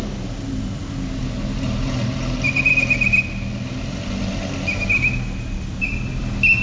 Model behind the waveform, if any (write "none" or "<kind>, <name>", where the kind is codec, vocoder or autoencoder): none